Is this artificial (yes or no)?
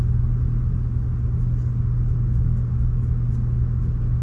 no